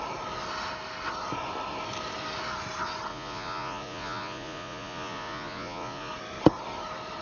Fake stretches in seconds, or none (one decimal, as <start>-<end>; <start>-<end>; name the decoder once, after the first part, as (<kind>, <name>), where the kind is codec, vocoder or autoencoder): 3.1-6.1 (vocoder, Vocos)